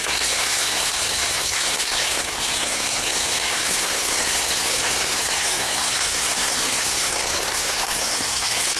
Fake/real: fake